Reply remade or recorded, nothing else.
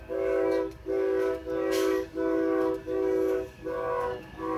remade